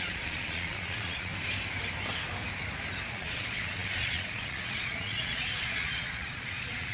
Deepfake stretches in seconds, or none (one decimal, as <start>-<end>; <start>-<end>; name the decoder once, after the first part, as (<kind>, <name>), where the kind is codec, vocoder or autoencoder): 0.0-1.3 (vocoder, Vocos); 3.1-6.9